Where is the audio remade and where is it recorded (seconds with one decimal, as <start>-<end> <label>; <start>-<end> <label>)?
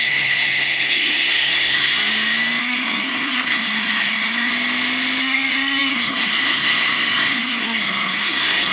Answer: 0.0-1.9 remade; 1.9-2.6 recorded; 2.6-4.5 remade; 4.5-5.2 recorded; 5.2-8.7 remade